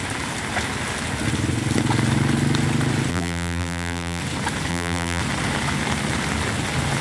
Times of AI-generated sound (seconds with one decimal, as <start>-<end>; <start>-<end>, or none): 3.1-4.2; 4.7-5.2